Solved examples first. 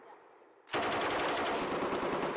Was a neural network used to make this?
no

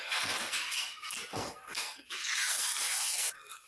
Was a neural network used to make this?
yes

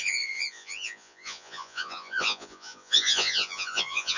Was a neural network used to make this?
yes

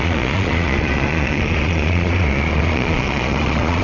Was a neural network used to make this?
yes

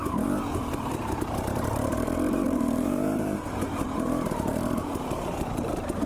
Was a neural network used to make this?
yes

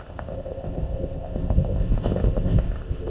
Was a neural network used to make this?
yes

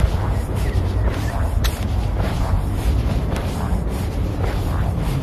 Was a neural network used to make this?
yes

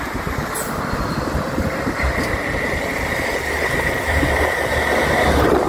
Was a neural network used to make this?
no